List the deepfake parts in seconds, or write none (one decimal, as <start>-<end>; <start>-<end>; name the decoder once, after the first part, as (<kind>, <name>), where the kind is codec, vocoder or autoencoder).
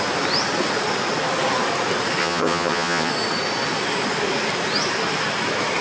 2.2-3.1 (vocoder, HiFi-GAN)